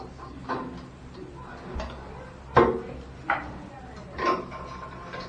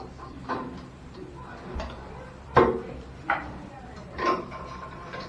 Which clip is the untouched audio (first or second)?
first